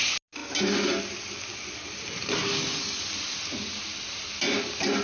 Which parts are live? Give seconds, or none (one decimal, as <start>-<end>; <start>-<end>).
0.0-2.4; 3.1-5.0